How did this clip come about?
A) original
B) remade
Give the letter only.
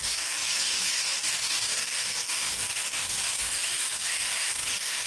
B